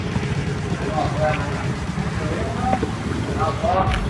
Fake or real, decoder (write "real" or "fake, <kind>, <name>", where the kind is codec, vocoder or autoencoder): real